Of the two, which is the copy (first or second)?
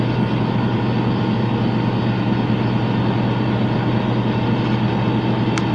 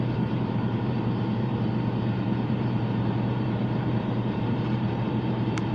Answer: second